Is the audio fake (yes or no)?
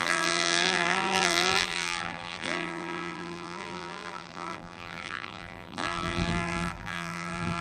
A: yes